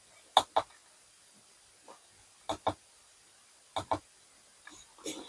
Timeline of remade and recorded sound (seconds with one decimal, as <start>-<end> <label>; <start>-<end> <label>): 0.0-5.3 recorded